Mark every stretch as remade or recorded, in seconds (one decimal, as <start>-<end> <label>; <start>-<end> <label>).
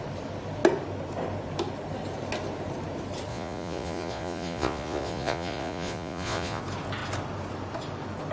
0.0-3.3 recorded; 3.3-6.6 remade; 6.6-8.3 recorded